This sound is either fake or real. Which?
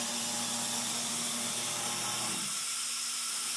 real